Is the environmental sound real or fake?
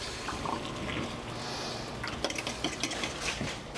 real